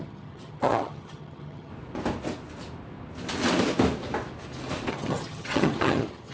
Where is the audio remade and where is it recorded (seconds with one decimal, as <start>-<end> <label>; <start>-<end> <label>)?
0.0-1.7 remade; 1.7-4.9 recorded; 4.9-6.3 remade